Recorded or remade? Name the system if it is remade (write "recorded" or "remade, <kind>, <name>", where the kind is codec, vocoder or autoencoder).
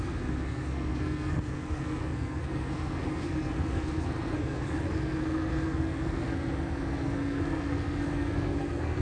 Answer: remade, codec, SNAC